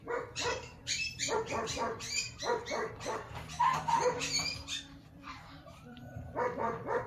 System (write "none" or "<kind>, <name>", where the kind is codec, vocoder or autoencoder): vocoder, BigVGAN v2